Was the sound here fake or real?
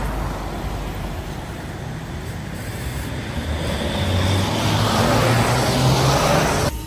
real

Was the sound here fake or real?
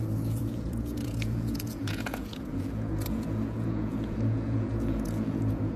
fake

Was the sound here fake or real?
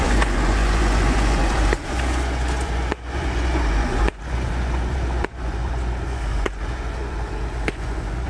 fake